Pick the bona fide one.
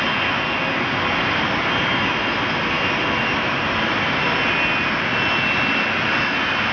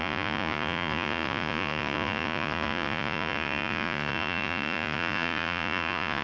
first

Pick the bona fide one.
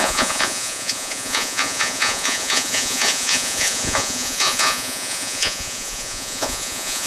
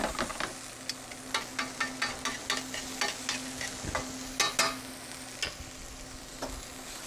second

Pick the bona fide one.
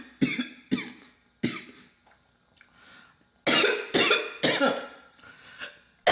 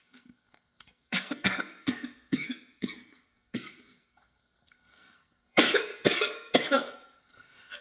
first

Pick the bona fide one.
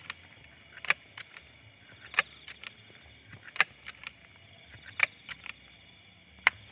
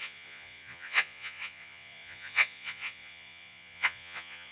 first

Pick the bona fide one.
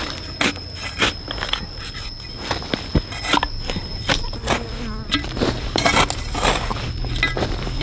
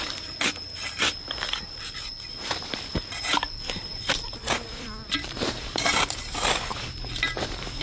first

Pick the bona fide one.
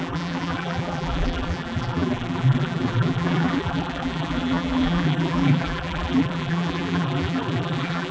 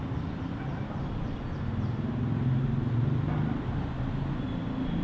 second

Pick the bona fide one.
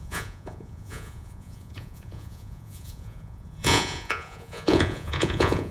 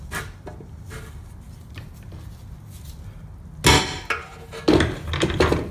second